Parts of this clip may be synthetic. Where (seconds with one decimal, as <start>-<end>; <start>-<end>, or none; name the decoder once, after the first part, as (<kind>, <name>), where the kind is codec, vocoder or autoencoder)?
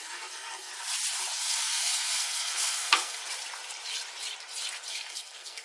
0.0-0.7 (codec, SNAC); 1.4-3.2; 4.9-5.6